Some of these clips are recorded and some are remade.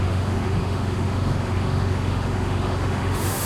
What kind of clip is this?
remade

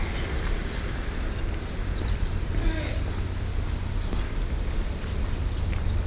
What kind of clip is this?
remade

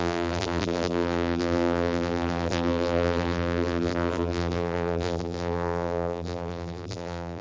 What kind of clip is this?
remade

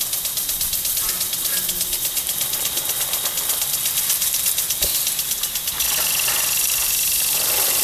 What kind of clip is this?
recorded